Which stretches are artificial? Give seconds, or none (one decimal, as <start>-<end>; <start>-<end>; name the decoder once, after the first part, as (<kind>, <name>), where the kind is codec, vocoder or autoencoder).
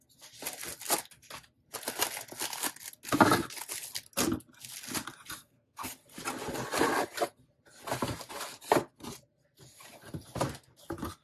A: 5.4-5.9 (codec, SNAC)